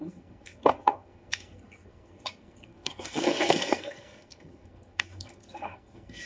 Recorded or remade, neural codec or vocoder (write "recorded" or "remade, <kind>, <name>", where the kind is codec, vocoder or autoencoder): remade, codec, SNAC